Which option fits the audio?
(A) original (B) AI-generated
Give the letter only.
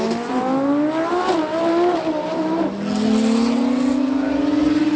A